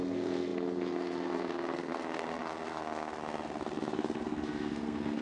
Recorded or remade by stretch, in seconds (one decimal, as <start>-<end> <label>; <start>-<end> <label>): 0.0-5.2 remade